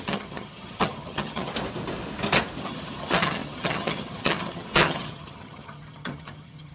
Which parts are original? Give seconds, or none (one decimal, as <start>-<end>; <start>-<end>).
1.5-2.6

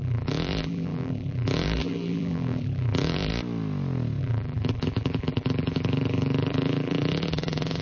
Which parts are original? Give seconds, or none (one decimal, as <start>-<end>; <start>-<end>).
3.3-4.2

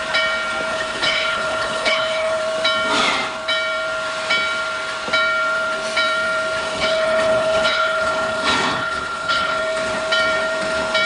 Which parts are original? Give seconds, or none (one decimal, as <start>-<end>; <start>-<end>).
0.0-0.7; 2.4-6.6; 9.6-11.1